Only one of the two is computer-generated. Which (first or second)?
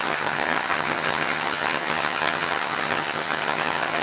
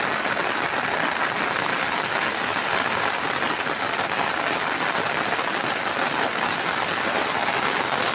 first